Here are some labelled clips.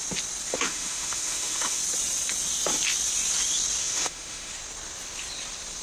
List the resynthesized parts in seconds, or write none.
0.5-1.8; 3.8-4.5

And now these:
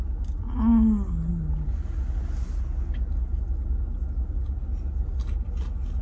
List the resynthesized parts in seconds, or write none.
none

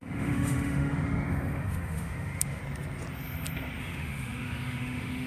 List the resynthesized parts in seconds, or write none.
0.0-2.6; 3.8-5.3

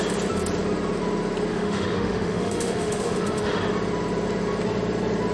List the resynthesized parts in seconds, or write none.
1.5-3.6

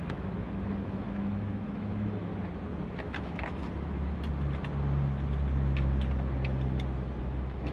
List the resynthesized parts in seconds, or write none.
0.0-2.3; 3.0-3.6; 7.2-7.7

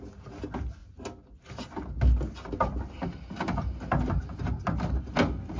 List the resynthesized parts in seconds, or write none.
none

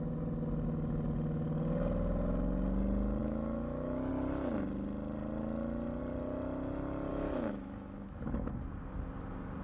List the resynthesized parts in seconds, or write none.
3.2-4.1; 7.1-8.5

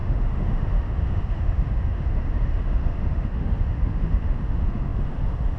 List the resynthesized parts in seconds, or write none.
0.0-5.6